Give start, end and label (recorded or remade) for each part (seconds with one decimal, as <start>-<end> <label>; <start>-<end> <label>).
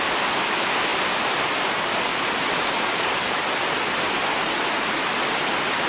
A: 0.0-5.9 recorded